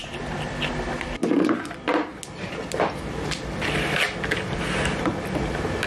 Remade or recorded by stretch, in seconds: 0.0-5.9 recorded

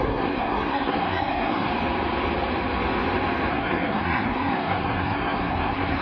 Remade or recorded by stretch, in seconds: 0.0-1.7 remade; 1.7-3.5 recorded; 3.5-6.0 remade